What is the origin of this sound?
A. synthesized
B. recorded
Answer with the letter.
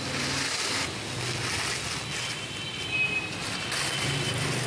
B